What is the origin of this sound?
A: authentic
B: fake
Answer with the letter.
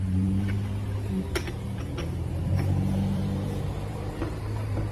B